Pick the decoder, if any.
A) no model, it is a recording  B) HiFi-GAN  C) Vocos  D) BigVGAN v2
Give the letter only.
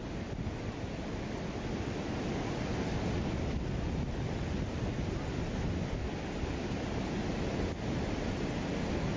A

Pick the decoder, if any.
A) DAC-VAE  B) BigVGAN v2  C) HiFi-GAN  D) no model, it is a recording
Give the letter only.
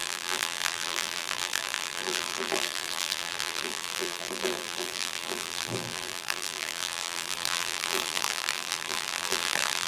B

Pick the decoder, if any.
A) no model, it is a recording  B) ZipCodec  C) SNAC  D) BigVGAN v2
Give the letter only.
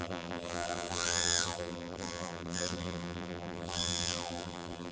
D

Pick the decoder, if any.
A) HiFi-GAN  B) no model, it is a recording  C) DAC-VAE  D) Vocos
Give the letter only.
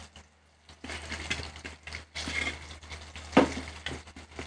B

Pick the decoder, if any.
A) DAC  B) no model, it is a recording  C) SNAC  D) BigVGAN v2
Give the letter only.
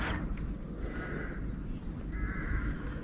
B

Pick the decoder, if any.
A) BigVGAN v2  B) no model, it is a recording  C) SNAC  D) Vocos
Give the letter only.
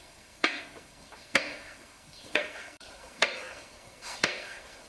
C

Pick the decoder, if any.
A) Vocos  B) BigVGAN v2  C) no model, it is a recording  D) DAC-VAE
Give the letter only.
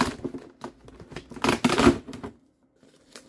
C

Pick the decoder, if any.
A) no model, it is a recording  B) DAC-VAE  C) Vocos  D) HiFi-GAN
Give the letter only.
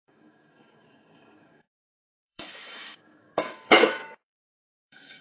B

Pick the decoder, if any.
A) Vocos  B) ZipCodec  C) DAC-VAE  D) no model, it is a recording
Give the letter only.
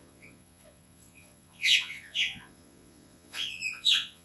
A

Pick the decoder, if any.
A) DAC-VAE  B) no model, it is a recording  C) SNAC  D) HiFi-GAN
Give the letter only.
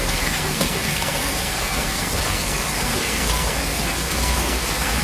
C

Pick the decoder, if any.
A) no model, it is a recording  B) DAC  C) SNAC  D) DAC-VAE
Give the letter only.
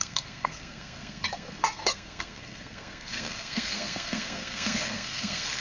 C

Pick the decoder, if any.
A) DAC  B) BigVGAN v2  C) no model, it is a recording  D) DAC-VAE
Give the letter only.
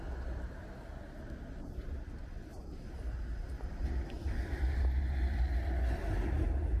C